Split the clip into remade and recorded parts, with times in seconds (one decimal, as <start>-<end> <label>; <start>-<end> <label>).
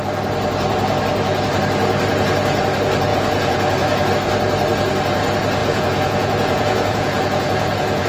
0.0-3.1 recorded; 3.1-4.1 remade; 4.1-5.6 recorded; 5.6-8.1 remade